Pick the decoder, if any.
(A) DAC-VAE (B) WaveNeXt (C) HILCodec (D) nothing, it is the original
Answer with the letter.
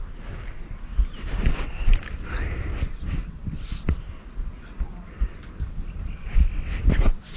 D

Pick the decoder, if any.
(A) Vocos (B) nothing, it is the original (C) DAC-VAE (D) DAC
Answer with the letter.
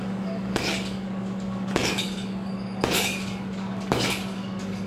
D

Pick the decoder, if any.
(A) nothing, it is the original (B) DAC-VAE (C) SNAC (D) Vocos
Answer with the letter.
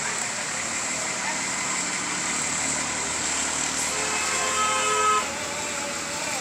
A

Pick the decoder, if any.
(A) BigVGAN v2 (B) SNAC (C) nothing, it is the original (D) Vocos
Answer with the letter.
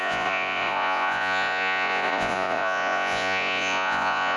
D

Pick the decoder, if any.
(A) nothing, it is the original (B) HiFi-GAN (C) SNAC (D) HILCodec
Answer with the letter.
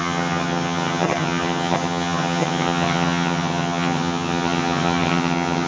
B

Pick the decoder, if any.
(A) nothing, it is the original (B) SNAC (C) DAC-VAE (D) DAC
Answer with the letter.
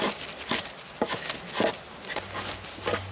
A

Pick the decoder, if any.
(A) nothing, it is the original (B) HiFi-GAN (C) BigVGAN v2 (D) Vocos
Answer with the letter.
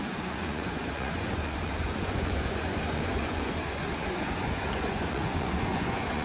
D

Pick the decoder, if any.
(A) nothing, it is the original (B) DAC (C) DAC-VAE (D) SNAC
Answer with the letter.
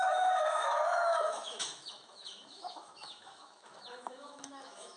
C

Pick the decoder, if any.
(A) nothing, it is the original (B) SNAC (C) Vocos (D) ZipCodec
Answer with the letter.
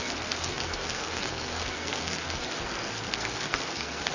B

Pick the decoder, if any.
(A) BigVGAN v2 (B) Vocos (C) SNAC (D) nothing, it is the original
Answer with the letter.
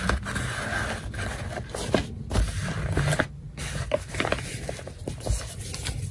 D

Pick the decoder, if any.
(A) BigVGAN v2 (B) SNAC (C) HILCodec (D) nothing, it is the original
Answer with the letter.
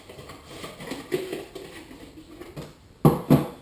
D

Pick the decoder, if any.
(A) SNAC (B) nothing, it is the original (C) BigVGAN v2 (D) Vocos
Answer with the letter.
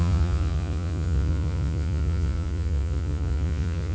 D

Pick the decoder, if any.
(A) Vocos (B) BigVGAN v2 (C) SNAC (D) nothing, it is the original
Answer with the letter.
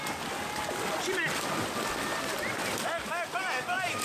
D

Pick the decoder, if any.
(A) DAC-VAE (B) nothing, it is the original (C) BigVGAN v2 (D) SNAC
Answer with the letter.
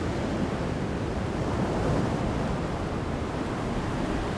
C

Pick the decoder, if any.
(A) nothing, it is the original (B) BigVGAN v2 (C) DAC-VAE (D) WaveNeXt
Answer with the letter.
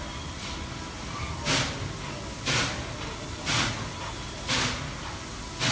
A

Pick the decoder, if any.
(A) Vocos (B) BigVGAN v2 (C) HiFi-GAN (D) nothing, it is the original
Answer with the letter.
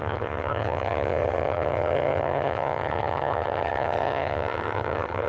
C